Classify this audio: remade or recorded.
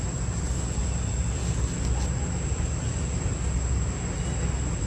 recorded